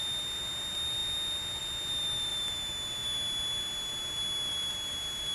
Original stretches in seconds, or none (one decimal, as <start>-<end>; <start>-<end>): 0.0-5.3

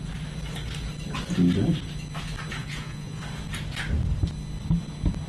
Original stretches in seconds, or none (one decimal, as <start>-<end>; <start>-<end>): 0.0-2.6; 3.2-5.3

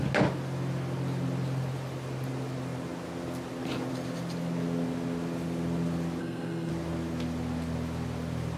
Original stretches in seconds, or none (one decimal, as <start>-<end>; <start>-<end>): 0.0-6.2; 6.7-8.6